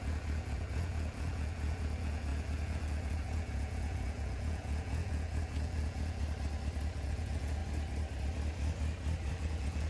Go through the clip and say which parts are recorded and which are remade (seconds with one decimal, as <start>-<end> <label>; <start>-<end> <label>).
0.0-6.2 remade; 6.2-6.9 recorded; 6.9-7.6 remade; 7.6-9.3 recorded; 9.3-9.9 remade